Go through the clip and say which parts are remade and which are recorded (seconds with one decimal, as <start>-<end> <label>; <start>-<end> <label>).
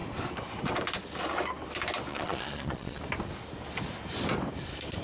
0.0-2.1 recorded; 2.1-3.0 remade; 3.0-5.0 recorded